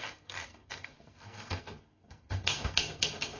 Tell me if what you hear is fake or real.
fake